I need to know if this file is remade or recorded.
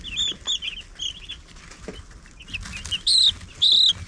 recorded